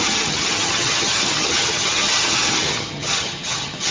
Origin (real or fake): fake